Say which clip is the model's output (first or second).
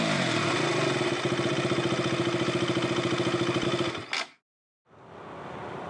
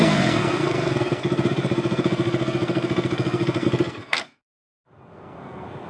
second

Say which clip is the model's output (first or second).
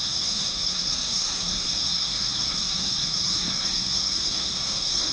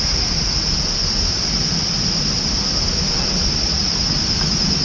first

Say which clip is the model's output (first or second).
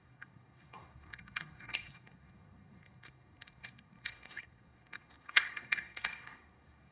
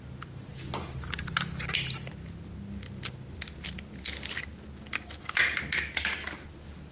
first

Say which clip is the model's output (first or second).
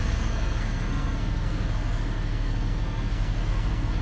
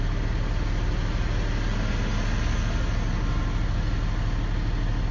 first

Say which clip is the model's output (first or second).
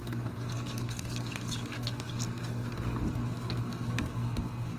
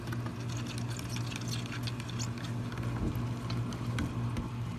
first